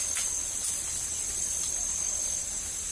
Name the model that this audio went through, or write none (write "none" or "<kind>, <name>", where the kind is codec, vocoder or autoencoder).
none